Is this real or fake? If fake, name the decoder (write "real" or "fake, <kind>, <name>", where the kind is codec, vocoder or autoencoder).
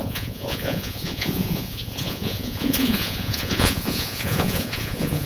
fake, vocoder, Vocos